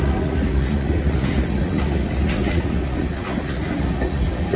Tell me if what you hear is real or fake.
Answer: fake